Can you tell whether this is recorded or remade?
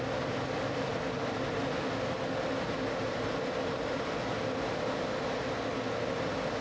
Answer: recorded